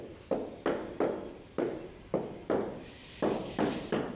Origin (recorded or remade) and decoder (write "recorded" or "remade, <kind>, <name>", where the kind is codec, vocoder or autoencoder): recorded